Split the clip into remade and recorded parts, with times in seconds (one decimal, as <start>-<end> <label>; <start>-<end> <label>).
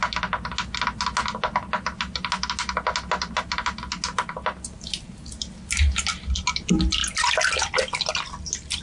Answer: 0.0-8.8 recorded